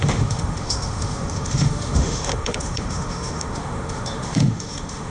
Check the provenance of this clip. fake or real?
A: fake